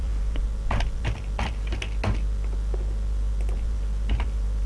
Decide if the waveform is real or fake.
real